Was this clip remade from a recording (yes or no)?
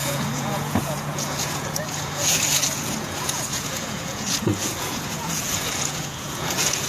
yes